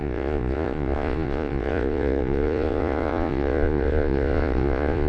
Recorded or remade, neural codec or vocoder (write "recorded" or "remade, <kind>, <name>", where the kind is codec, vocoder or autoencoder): remade, vocoder, Vocos